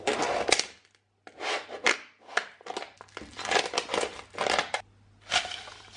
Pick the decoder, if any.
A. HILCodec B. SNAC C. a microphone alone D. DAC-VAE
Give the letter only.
C